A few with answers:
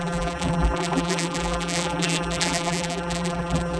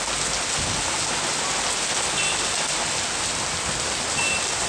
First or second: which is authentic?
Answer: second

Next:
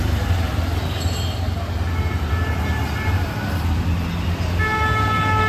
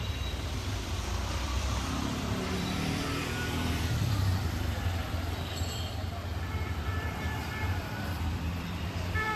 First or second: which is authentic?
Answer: first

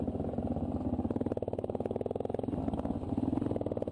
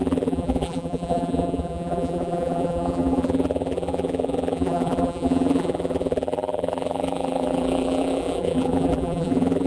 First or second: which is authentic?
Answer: first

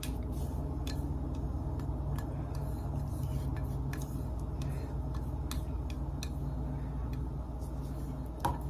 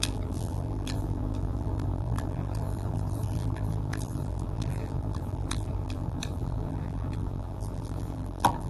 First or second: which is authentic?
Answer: first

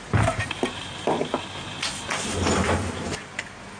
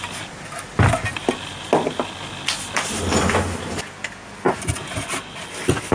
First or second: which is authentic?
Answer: second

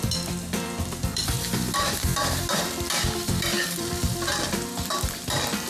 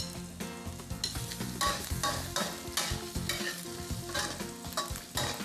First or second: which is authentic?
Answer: second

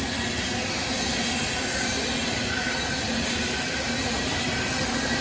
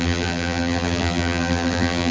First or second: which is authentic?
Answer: first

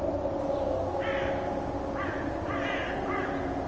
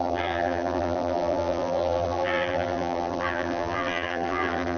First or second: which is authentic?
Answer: first